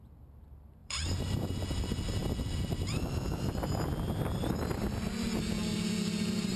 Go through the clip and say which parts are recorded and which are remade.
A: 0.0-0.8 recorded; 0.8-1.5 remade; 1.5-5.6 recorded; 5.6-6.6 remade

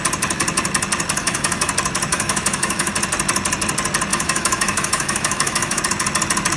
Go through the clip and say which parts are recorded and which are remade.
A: 0.0-1.2 recorded; 1.2-1.7 remade; 1.7-2.1 recorded; 2.1-2.9 remade; 2.9-4.1 recorded; 4.1-5.8 remade; 5.8-6.6 recorded

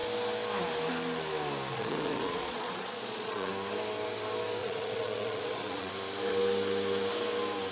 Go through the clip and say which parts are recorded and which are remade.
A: 0.0-1.7 recorded; 1.7-3.5 remade; 3.5-4.6 recorded; 4.6-5.9 remade; 5.9-7.7 recorded

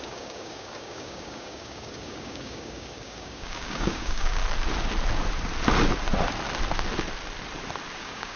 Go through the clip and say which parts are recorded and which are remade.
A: 0.0-4.4 remade; 4.4-8.0 recorded; 8.0-8.4 remade

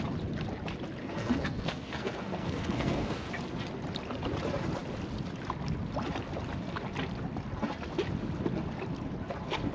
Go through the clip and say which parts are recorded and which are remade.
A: 0.0-1.0 recorded; 1.0-3.3 remade; 3.3-9.7 recorded

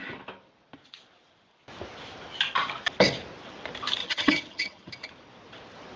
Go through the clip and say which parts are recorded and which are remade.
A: 0.0-4.0 recorded; 4.0-4.9 remade; 4.9-6.0 recorded